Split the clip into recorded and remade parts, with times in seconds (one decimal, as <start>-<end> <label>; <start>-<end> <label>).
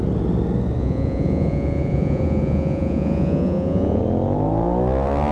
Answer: 0.0-0.8 recorded; 0.8-4.0 remade; 4.0-5.3 recorded